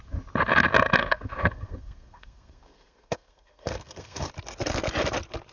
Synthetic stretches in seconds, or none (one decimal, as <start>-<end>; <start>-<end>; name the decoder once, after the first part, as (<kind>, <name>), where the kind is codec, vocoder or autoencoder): 1.0-4.3 (codec, SNAC)